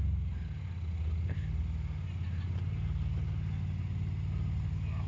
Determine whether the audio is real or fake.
real